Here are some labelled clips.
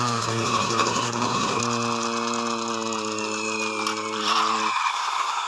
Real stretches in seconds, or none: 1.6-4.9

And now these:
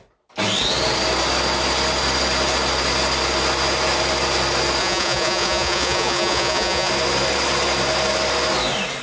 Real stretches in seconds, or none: 0.0-4.8; 6.9-9.0